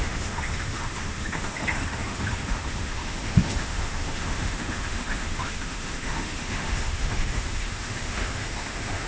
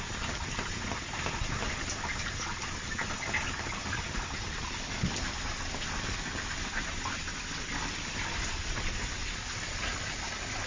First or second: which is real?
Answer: second